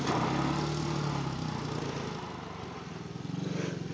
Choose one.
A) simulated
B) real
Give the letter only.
B